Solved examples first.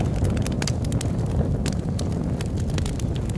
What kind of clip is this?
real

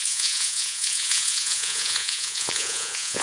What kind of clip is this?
fake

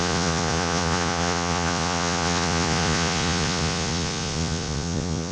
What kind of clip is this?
fake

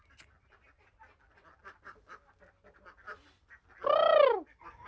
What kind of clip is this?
real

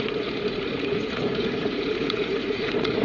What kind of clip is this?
fake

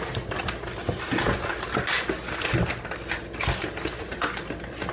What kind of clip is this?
real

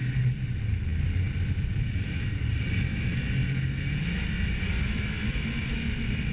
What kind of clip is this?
real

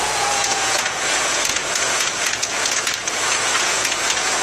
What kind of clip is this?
fake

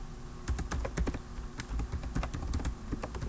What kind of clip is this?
real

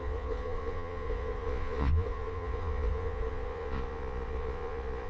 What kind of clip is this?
fake